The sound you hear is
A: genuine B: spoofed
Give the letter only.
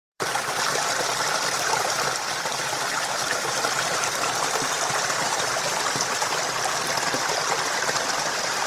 B